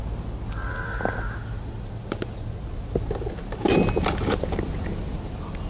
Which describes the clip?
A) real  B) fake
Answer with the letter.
A